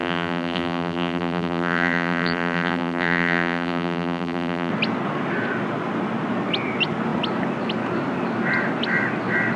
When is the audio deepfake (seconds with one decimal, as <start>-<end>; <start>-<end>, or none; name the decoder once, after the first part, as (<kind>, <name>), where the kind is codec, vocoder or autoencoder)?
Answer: 0.0-4.7 (vocoder, BigVGAN v2)